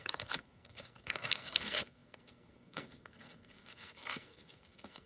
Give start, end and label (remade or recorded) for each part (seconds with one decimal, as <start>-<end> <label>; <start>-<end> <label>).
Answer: 0.0-5.1 remade